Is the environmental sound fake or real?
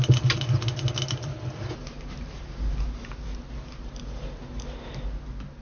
real